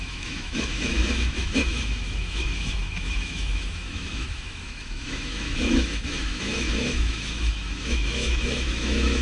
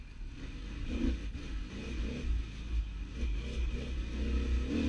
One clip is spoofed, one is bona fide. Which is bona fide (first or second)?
second